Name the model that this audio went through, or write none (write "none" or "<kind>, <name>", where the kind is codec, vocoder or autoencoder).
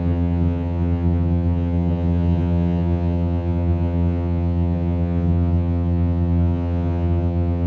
vocoder, HiFi-GAN